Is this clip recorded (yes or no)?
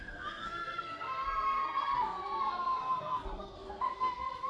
no